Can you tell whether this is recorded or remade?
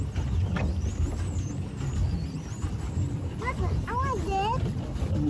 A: recorded